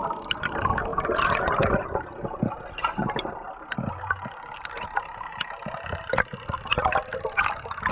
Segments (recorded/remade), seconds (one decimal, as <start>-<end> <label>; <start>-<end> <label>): 0.0-7.9 recorded